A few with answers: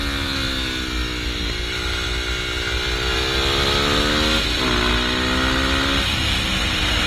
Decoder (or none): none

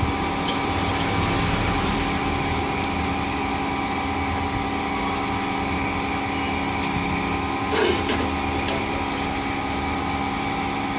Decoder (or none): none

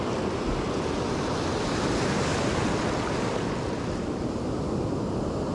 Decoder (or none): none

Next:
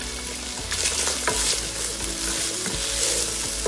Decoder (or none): none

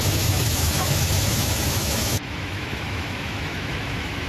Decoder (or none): autoencoder, DAC-VAE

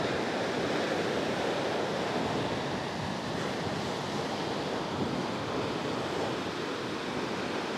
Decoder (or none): none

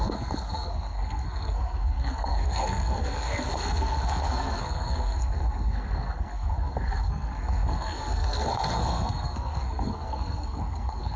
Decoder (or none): codec, SNAC